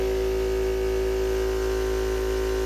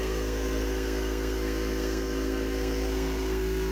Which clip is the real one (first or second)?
first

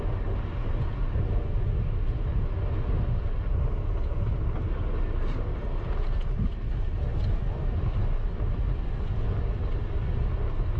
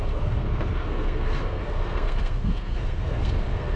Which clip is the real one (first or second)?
first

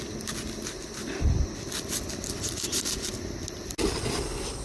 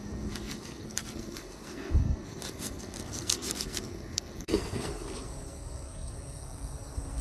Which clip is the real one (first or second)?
first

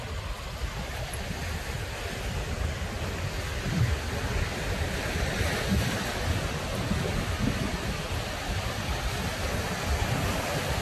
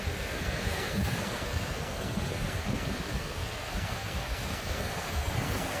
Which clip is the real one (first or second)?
first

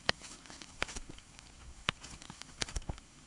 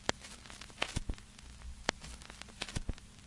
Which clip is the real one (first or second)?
second